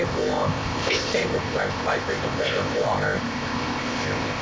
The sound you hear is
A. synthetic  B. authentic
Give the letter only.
A